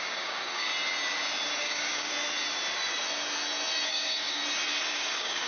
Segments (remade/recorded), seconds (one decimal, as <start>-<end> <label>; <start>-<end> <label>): 0.0-0.7 remade; 0.7-1.6 recorded; 1.6-2.1 remade; 2.1-3.9 recorded; 3.9-4.4 remade; 4.4-4.9 recorded; 4.9-5.5 remade

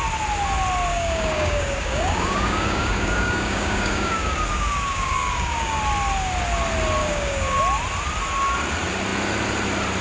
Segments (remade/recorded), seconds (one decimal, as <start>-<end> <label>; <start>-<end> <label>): 0.0-0.9 recorded; 0.9-5.8 remade; 5.8-7.0 recorded; 7.0-7.6 remade; 7.6-10.0 recorded

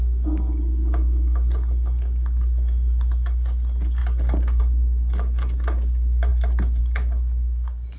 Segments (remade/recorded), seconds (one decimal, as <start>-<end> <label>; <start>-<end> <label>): 0.0-6.3 remade; 6.3-6.8 recorded; 6.8-8.0 remade

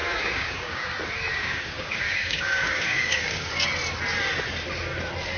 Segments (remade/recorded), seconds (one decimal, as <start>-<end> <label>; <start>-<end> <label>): 0.0-0.9 remade; 0.9-1.3 recorded; 1.3-3.5 remade; 3.5-5.4 recorded

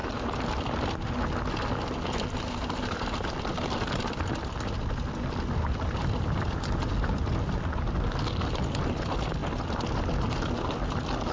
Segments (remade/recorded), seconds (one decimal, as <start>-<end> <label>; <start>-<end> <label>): 0.0-11.3 recorded

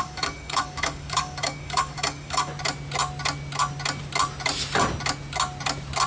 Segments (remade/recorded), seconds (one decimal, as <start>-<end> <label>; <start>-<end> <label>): 0.0-2.5 remade; 2.5-6.1 recorded

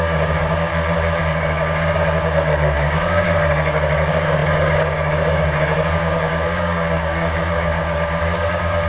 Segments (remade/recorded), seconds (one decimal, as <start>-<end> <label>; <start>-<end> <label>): 0.0-0.7 remade; 0.7-1.2 recorded; 1.2-8.9 remade

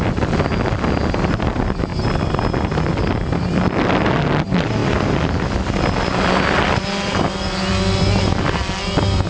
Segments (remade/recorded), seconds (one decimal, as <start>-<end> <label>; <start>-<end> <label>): 0.0-9.3 recorded